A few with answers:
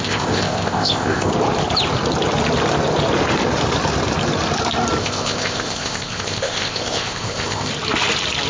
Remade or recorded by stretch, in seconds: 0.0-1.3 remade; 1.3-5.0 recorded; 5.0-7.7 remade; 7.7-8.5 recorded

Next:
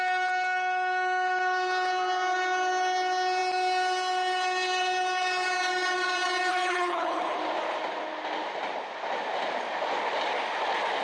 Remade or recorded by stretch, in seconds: 0.0-6.5 recorded; 6.5-7.4 remade; 7.4-11.0 recorded

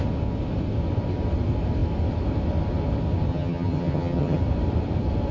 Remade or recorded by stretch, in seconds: 0.0-3.3 recorded; 3.3-4.4 remade; 4.4-5.3 recorded

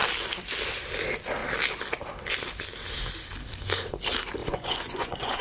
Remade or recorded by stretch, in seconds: 0.0-4.4 recorded; 4.4-5.4 remade

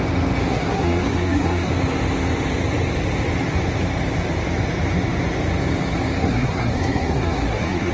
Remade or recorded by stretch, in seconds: 0.0-0.5 recorded; 0.5-1.7 remade; 1.7-6.2 recorded; 6.2-7.9 remade